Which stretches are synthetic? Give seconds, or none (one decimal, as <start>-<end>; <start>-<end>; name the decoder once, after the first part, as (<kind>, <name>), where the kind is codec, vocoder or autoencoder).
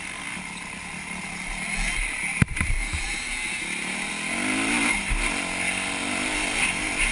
2.5-4.1 (vocoder, BigVGAN v2)